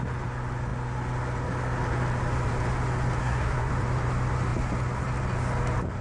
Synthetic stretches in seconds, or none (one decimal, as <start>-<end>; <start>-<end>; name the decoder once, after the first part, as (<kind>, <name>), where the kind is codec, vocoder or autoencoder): 3.2-3.7 (codec, SNAC)